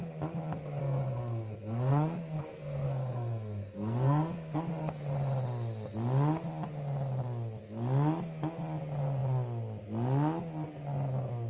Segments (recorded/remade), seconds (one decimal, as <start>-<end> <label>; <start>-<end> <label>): 0.0-0.8 recorded; 0.8-5.0 remade; 5.0-11.5 recorded